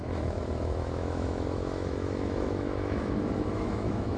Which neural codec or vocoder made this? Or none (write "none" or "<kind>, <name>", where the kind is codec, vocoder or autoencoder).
autoencoder, DAC-VAE